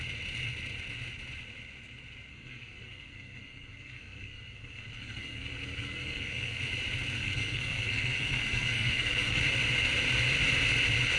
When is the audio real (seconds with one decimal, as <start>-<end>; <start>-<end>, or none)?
0.0-2.3; 6.6-7.2; 9.4-11.2